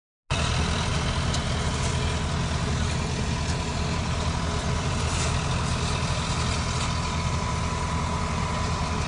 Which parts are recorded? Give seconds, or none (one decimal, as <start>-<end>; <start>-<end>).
0.0-9.1